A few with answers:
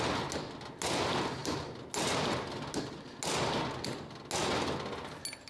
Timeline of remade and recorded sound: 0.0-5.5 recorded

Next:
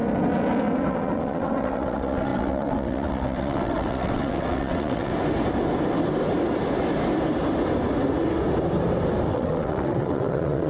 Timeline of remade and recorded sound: 0.0-0.9 recorded; 0.9-5.1 remade; 5.1-9.3 recorded; 9.3-10.7 remade

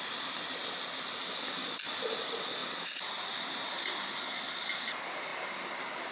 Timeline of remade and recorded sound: 0.0-6.1 recorded

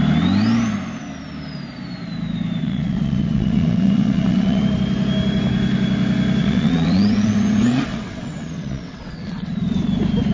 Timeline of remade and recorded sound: 0.0-2.6 recorded; 2.6-4.6 remade; 4.6-6.4 recorded; 6.4-9.5 remade; 9.5-10.3 recorded

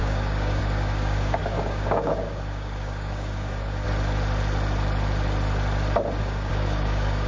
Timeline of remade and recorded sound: 0.0-3.8 remade; 3.8-6.2 recorded; 6.2-7.3 remade

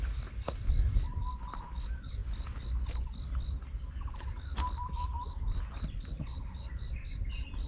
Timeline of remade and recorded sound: 0.0-7.7 recorded